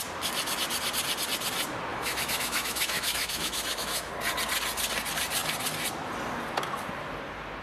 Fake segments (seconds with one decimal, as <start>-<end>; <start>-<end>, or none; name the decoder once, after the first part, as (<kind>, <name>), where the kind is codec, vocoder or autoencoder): 1.9-4.1 (autoencoder, DAC-VAE)